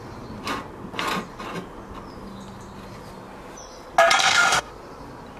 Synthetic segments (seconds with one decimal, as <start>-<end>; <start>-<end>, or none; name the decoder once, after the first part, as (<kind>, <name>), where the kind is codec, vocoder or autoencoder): 4.2-4.7 (autoencoder, DAC-VAE)